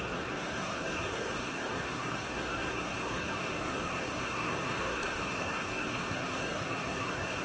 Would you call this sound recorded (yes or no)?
no